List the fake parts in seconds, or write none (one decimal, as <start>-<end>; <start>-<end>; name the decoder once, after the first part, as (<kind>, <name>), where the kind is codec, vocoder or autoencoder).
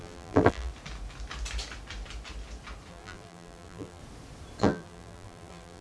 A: 0.0-0.7 (vocoder, BigVGAN v2); 2.9-4.0; 4.6-5.8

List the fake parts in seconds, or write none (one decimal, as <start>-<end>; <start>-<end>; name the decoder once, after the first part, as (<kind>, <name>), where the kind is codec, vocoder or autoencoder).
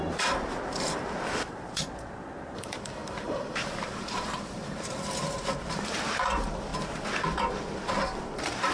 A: 0.0-6.7 (vocoder, BigVGAN v2); 8.2-8.7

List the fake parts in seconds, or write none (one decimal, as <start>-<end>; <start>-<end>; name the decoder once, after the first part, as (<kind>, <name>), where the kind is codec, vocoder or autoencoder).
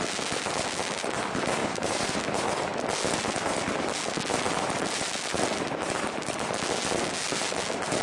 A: 1.6-2.2 (vocoder, BigVGAN v2)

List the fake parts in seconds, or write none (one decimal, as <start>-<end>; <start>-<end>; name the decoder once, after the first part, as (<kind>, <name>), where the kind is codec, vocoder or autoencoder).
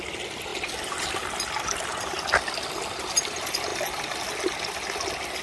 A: none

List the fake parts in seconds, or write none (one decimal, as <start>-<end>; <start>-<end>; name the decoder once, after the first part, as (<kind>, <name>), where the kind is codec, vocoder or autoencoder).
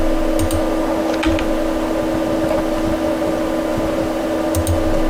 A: none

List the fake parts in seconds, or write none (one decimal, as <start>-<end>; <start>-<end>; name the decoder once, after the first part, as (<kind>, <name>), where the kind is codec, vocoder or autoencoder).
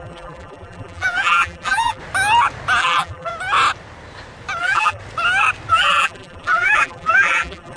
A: 0.0-2.0 (vocoder, BigVGAN v2); 2.8-3.3; 4.6-5.0; 5.7-7.8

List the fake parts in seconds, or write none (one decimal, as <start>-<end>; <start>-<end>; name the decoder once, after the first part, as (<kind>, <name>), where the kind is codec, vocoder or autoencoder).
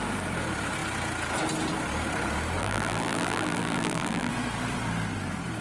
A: 2.6-4.3 (vocoder, BigVGAN v2)